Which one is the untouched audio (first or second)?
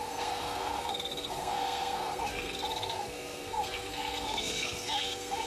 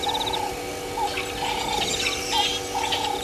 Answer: second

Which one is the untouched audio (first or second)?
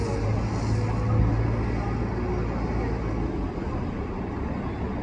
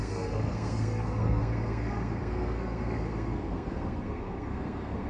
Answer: first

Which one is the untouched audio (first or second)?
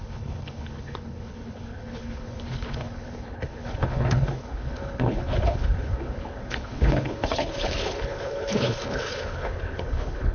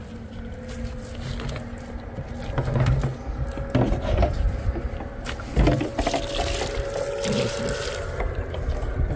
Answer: second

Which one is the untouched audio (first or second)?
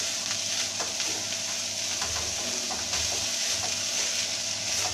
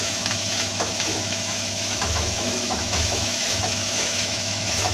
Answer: first